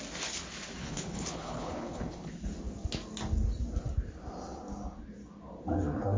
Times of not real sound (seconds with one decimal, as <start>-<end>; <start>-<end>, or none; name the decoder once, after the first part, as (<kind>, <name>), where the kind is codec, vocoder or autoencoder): 0.8-2.3 (codec, HILCodec)